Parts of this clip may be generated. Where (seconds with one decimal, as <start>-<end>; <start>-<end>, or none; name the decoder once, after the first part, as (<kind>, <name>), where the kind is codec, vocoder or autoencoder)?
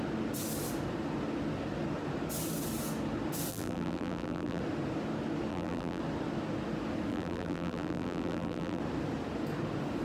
3.5-4.6 (vocoder, BigVGAN v2); 5.5-6.0; 7.1-8.8